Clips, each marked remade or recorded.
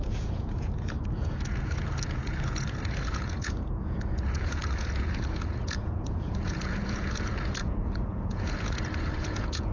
remade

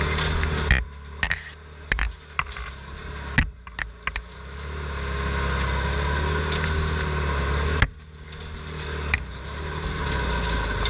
recorded